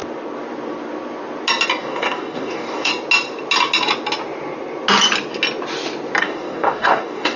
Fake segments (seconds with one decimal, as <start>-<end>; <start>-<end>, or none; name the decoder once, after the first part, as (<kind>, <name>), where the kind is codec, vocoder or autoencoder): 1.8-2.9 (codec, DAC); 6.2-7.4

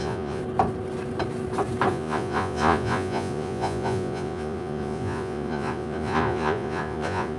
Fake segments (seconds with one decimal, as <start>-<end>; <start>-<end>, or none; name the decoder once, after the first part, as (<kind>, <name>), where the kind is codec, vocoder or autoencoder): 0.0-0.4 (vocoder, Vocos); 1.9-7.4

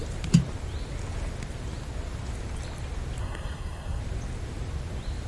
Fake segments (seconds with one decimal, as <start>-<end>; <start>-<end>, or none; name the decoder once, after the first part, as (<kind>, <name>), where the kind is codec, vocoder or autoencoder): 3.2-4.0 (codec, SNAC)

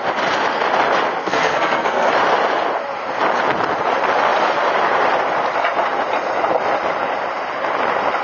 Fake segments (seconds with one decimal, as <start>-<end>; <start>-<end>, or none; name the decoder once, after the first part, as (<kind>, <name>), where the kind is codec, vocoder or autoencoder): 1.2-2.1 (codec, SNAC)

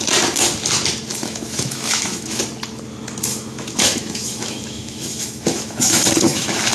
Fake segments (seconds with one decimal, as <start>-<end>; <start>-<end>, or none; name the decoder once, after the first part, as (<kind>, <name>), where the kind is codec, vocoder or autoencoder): 1.1-2.4 (autoencoder, DAC-VAE); 3.3-6.7